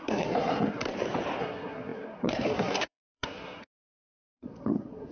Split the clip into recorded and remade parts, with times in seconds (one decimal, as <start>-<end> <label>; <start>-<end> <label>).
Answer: 0.0-0.9 remade; 0.9-1.4 recorded; 1.4-5.1 remade